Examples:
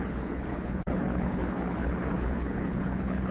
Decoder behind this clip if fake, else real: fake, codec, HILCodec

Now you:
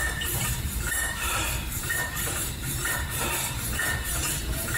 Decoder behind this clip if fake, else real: fake, vocoder, BigVGAN v2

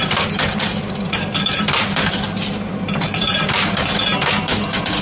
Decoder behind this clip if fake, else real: fake, vocoder, BigVGAN v2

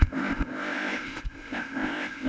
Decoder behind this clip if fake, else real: fake, codec, ZipCodec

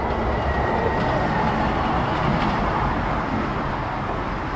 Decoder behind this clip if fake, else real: real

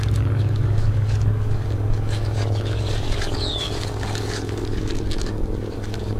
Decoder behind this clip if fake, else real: fake, codec, DAC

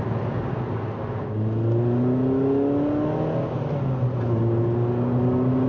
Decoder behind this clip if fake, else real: real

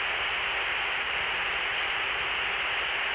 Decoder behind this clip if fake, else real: real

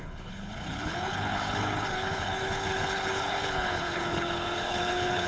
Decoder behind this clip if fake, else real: fake, codec, HILCodec